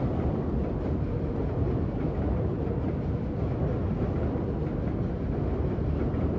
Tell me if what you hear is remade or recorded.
recorded